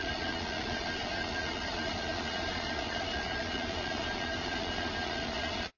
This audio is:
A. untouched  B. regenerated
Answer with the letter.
B